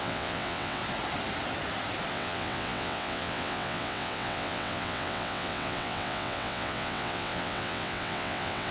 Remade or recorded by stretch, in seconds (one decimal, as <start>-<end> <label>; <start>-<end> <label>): 0.0-0.8 remade; 0.8-2.1 recorded; 2.1-8.7 remade